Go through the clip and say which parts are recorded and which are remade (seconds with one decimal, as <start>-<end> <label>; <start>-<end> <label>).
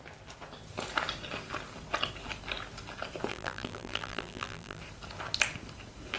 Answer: 0.0-3.3 recorded; 3.3-4.8 remade; 4.8-6.2 recorded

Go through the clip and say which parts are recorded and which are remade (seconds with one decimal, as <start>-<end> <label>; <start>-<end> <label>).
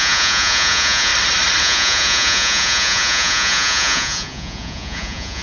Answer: 0.0-1.1 remade; 1.1-1.6 recorded; 1.6-5.4 remade